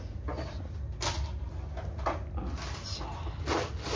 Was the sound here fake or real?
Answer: real